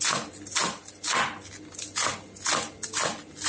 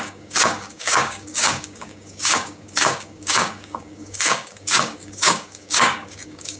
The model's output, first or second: second